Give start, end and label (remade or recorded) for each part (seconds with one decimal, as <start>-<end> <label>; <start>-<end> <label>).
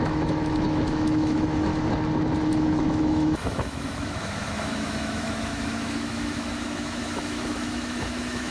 0.0-1.7 remade; 1.7-2.4 recorded; 2.4-8.5 remade